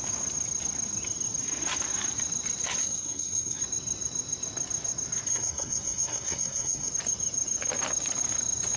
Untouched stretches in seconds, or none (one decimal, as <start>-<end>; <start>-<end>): 0.0-2.8; 3.6-5.3; 6.9-8.8